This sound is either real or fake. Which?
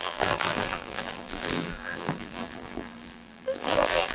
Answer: fake